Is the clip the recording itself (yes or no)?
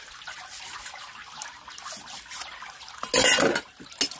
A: yes